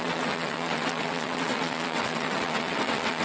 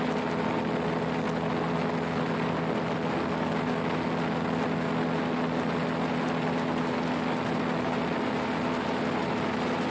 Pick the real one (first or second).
second